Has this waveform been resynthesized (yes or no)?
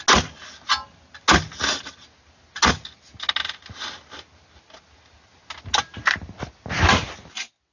no